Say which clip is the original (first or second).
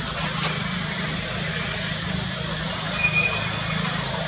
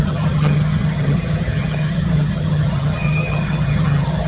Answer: first